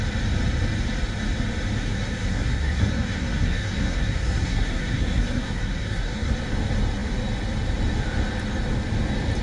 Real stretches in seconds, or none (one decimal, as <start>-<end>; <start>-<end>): 0.0-1.8; 6.3-9.4